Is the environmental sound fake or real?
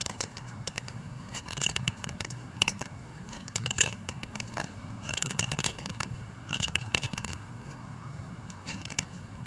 fake